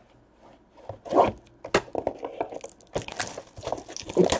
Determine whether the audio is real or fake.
real